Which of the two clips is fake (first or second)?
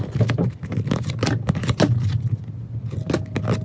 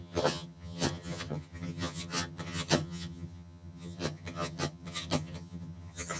second